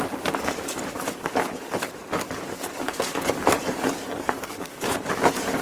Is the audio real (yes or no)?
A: no